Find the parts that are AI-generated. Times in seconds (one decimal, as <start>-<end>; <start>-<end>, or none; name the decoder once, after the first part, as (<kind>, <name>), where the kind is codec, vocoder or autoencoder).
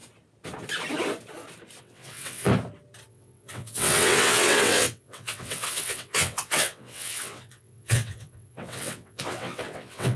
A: 1.8-2.5 (vocoder, WaveNeXt); 3.1-10.2